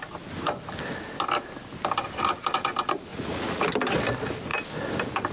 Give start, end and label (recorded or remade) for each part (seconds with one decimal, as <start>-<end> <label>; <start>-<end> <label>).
0.0-3.1 recorded; 3.1-3.6 remade; 3.6-5.3 recorded